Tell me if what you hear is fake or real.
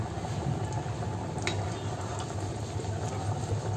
real